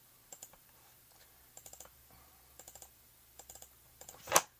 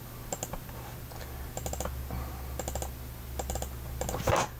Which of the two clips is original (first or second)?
second